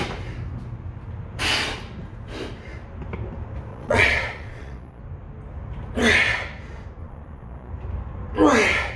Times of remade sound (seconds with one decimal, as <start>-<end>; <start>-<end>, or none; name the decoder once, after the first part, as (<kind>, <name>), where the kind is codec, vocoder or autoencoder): 3.7-5.0 (vocoder, Vocos); 7.0-7.7